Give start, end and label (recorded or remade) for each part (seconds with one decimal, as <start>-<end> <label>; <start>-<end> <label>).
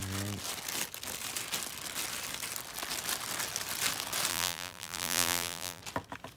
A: 0.0-4.3 recorded; 4.3-5.8 remade; 5.8-6.4 recorded